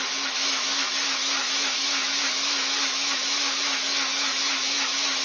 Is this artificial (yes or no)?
yes